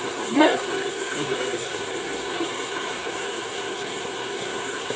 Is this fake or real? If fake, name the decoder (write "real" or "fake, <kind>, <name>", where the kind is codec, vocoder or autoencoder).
fake, codec, SNAC